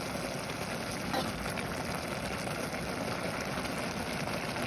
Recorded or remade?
recorded